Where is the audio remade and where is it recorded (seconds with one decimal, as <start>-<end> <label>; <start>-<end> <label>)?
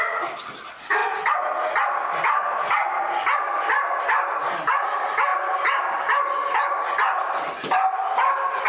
0.0-8.7 recorded